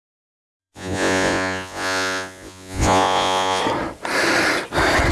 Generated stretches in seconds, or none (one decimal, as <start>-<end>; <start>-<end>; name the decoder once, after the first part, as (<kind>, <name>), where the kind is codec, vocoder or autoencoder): 0.6-3.6 (vocoder, Vocos)